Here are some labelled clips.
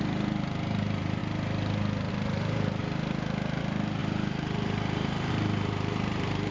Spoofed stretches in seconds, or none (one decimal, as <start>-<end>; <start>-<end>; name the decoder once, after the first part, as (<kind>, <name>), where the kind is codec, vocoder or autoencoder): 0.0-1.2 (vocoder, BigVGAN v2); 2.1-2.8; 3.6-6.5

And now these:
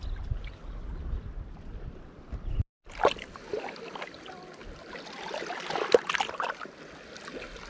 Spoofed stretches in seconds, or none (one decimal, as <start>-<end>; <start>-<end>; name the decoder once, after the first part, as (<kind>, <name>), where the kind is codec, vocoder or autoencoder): none

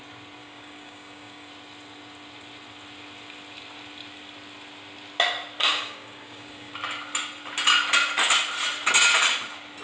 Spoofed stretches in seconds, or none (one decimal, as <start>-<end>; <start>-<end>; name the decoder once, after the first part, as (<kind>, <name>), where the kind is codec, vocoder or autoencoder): 0.4-1.5 (codec, DAC); 5.7-6.7